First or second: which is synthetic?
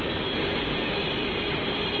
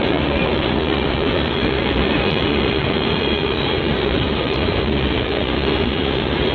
second